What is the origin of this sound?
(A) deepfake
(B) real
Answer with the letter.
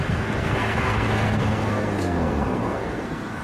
A